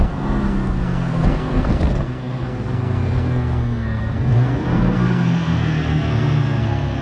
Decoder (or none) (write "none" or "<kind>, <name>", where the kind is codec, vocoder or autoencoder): codec, SNAC